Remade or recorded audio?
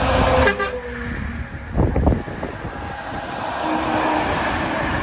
recorded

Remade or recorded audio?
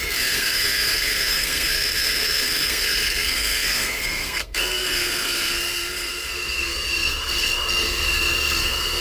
remade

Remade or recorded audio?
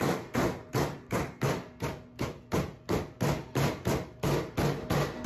recorded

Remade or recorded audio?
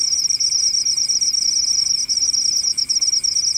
recorded